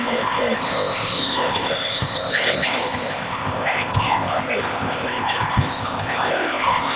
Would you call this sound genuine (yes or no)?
no